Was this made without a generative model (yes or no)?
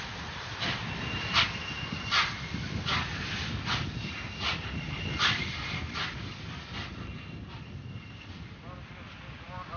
yes